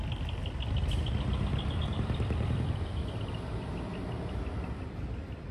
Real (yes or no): yes